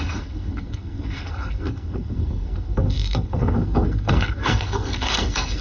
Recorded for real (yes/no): no